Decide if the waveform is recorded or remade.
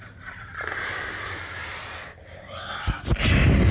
recorded